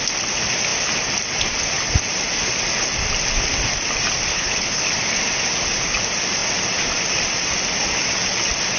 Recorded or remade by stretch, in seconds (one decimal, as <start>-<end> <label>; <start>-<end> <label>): 0.0-4.3 recorded; 4.3-4.8 remade; 4.8-8.8 recorded